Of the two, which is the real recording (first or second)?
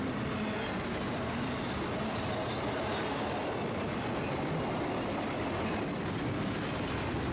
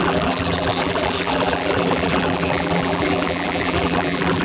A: first